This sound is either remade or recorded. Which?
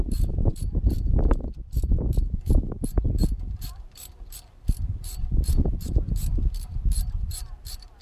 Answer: remade